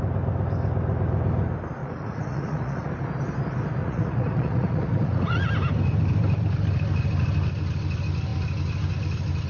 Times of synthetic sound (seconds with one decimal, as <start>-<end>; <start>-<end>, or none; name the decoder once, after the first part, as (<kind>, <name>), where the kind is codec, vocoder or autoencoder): 1.8-2.9 (vocoder, Vocos); 3.8-5.5